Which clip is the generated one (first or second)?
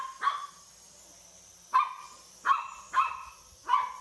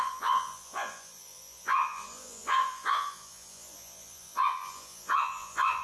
second